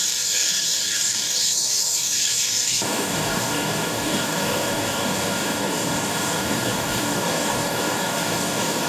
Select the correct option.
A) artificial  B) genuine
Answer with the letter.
A